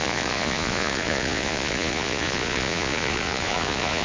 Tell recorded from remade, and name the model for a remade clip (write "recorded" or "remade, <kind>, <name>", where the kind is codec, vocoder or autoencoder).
remade, vocoder, Vocos